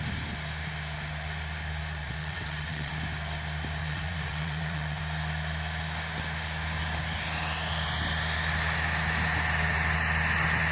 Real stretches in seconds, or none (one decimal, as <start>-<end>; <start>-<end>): 0.0-2.0; 2.9-3.8; 5.0-10.7